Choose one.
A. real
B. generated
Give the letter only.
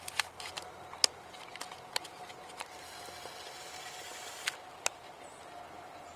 A